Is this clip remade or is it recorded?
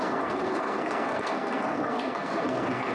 remade